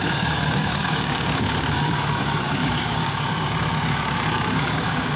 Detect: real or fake fake